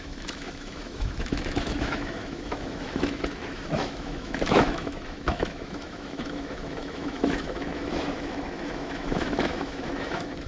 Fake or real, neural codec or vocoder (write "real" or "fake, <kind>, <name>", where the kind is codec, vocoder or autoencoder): fake, autoencoder, DAC-VAE